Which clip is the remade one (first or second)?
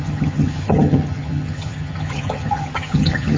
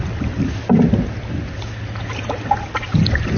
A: first